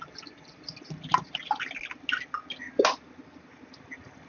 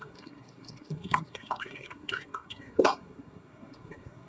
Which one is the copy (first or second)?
second